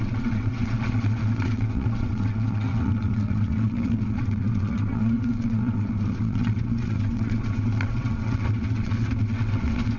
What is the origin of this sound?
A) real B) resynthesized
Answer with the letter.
B